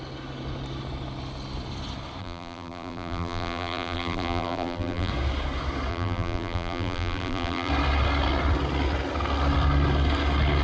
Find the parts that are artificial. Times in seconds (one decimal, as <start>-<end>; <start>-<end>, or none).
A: 2.2-5.1; 5.9-7.7